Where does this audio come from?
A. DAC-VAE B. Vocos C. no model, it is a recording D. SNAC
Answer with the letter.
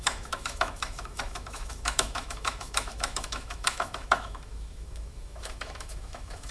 A